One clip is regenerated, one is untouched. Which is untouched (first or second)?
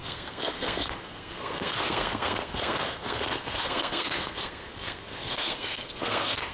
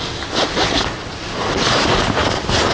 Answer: second